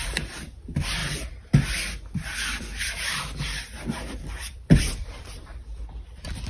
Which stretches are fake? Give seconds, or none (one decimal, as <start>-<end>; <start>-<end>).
0.0-1.0; 2.6-6.5